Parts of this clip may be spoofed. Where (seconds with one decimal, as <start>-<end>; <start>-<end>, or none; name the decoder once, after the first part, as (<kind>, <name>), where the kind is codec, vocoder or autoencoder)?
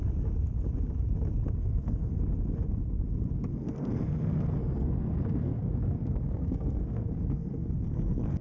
1.6-2.2 (codec, SNAC); 3.5-8.4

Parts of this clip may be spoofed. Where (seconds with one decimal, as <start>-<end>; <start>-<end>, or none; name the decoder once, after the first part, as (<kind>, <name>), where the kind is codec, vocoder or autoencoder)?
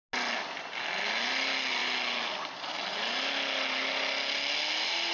none